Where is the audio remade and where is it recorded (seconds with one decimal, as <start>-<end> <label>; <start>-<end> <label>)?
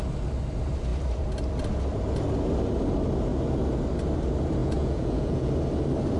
0.0-4.6 recorded; 4.6-5.5 remade; 5.5-6.2 recorded